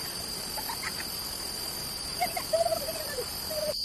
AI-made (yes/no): no